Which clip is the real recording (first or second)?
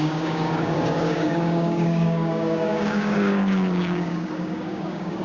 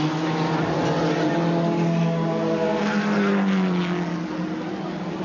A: second